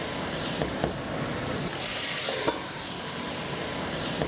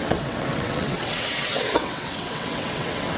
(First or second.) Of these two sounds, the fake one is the second